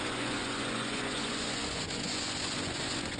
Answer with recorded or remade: remade